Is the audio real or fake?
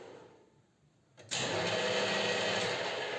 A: real